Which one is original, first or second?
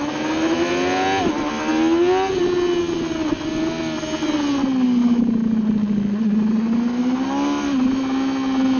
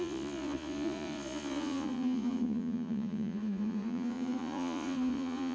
first